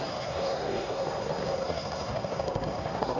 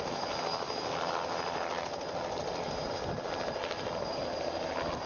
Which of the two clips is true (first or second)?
second